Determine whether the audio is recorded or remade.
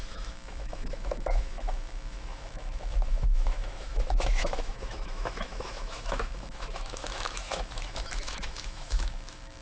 remade